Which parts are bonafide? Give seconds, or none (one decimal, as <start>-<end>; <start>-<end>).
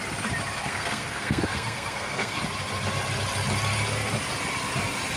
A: 0.0-0.6; 2.4-5.2